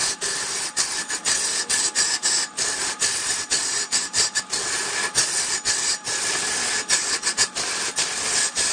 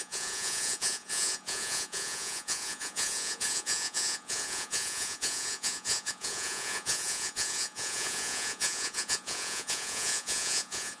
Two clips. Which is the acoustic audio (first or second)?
first